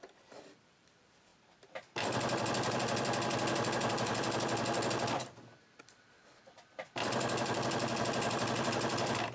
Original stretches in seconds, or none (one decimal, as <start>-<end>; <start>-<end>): 1.3-5.8